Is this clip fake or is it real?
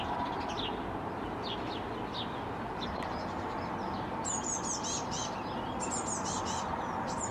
real